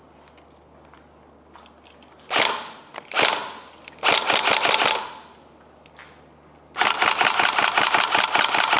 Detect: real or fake real